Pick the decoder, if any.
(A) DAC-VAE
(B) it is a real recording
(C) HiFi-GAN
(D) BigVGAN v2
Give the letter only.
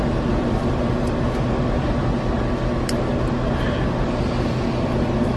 B